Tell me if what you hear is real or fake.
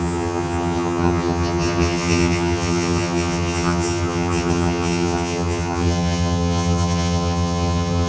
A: fake